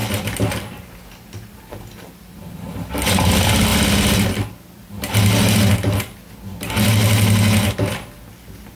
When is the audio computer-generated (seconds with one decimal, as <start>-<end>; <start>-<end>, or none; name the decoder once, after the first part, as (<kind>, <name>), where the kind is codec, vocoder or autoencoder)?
none